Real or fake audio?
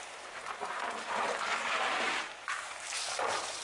fake